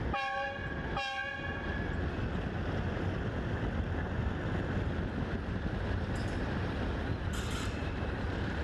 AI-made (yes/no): no